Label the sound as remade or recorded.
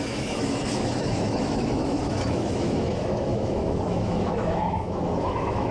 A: remade